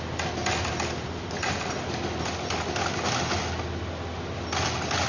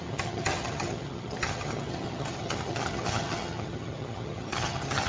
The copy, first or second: second